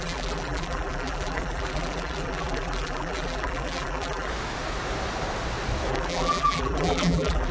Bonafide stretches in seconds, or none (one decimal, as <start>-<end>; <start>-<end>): 4.3-5.9